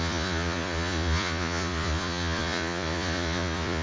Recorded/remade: remade